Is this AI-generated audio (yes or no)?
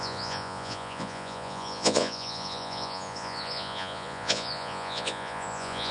yes